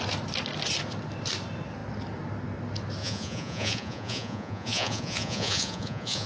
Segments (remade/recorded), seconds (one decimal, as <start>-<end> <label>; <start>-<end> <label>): 0.0-3.0 recorded; 3.0-6.3 remade